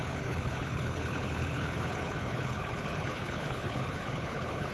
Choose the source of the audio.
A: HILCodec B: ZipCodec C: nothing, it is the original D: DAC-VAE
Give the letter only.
A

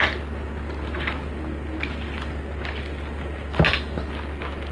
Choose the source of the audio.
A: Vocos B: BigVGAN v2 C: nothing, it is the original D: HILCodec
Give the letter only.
C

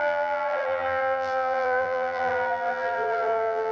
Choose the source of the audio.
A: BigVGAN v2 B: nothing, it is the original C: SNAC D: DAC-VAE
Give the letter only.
A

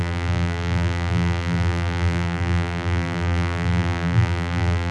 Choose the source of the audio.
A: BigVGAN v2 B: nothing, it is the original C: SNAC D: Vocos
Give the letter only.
A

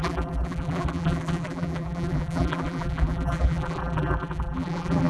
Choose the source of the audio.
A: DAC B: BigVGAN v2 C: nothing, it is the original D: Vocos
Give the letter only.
B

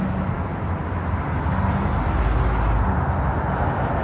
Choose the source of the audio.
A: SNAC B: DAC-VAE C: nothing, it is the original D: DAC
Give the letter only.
C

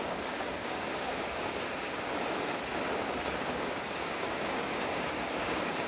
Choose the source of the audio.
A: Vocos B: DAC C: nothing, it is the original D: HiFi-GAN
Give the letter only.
B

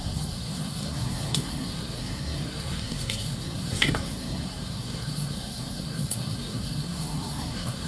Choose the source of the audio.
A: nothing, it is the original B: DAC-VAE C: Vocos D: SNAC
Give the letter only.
D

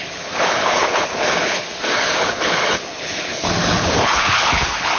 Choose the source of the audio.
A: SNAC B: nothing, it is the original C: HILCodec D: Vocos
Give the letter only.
C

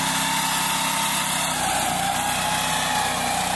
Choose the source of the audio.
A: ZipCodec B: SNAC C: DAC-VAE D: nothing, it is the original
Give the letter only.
D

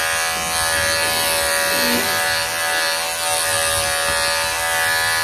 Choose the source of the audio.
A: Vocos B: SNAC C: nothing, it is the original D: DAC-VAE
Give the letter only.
C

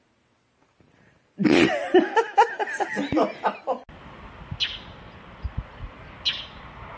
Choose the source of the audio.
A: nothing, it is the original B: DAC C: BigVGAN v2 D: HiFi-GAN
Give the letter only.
A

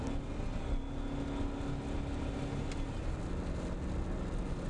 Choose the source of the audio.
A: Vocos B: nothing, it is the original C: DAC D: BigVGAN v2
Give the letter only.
B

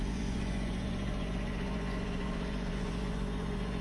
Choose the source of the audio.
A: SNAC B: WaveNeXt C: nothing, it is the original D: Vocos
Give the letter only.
D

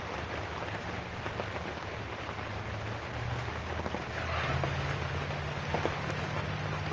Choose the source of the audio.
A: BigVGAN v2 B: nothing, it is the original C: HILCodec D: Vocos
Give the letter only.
B